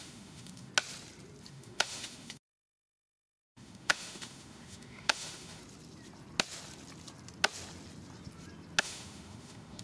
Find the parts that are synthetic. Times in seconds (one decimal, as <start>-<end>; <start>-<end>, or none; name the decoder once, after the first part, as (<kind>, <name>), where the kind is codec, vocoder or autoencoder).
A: 0.0-0.7 (autoencoder, DAC-VAE); 1.5-5.6; 8.8-9.8